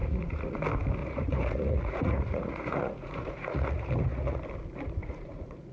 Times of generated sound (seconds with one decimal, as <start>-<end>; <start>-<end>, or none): 0.0-0.6; 1.0-4.4; 5.0-5.7